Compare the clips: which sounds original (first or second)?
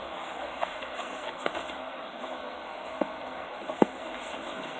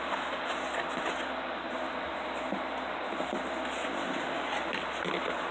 second